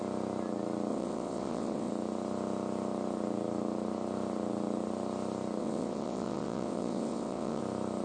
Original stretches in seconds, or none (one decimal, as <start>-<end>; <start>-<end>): 0.0-0.9; 1.9-5.6; 7.6-8.0